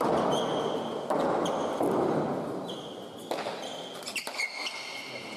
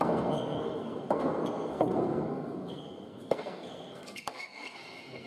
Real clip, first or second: first